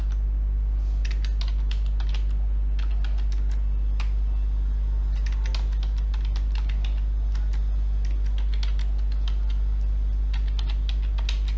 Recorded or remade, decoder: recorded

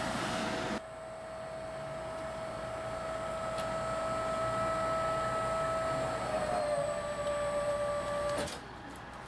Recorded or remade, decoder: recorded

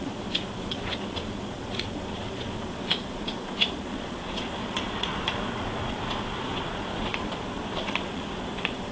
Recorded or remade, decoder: remade, vocoder, Vocos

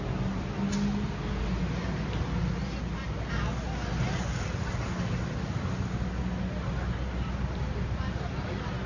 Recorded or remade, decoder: recorded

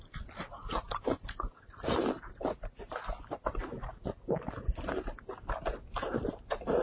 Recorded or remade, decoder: recorded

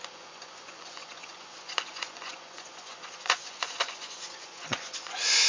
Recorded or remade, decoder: remade, vocoder, Vocos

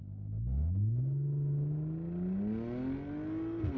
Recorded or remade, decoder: recorded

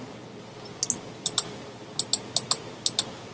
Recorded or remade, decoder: recorded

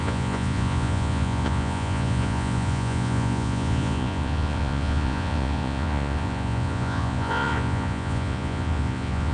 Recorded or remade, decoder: remade, vocoder, Vocos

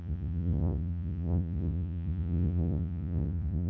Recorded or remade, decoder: remade, vocoder, Vocos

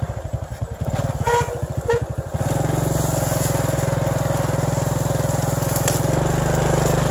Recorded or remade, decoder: recorded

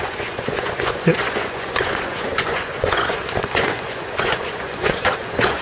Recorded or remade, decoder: remade, vocoder, Vocos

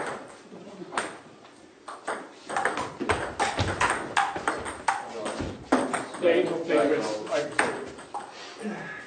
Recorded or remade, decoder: recorded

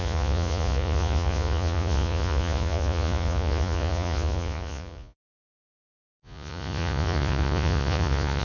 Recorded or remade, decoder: remade, vocoder, Vocos